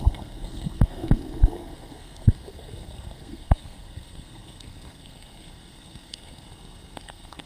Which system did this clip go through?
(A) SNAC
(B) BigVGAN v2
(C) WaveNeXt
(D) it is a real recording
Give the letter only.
A